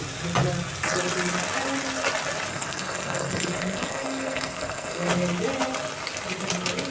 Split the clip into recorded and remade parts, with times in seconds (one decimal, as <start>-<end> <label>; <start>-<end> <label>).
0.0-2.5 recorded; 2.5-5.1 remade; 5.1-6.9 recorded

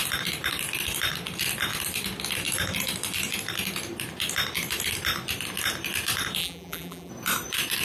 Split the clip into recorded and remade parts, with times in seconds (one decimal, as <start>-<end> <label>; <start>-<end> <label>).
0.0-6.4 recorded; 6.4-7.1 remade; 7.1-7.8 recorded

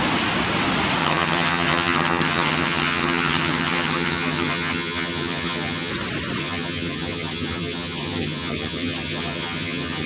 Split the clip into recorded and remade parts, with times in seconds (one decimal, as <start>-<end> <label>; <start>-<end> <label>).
0.0-1.0 recorded; 1.0-5.9 remade; 5.9-6.4 recorded; 6.4-10.1 remade

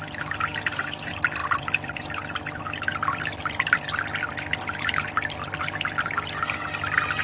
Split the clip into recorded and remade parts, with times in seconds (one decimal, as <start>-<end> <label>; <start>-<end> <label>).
0.0-7.2 remade

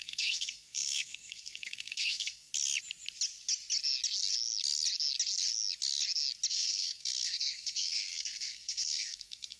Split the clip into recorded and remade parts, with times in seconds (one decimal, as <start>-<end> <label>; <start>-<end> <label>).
0.0-2.5 remade; 2.5-6.5 recorded; 6.5-9.6 remade

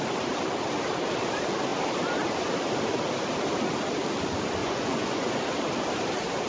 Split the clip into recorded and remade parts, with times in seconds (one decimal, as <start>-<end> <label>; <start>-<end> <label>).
0.0-4.6 recorded; 4.6-5.3 remade; 5.3-6.5 recorded